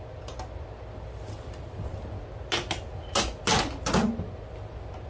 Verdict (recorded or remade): recorded